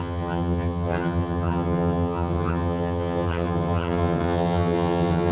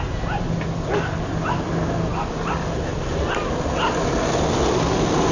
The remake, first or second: first